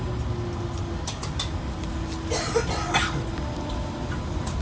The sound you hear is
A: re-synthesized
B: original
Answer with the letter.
B